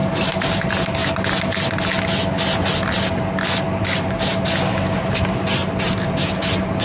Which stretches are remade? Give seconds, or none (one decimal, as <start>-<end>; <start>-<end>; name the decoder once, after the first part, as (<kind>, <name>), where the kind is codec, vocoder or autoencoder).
none